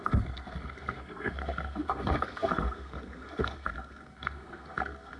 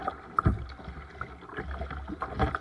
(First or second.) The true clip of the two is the second